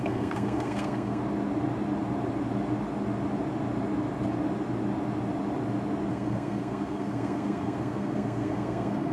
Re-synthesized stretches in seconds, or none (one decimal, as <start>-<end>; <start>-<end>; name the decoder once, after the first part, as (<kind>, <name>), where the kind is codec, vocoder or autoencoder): 0.0-1.2 (codec, SNAC); 6.1-9.1